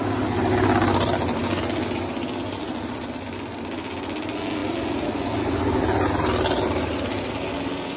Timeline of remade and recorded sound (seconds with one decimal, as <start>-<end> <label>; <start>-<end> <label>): 0.0-8.0 recorded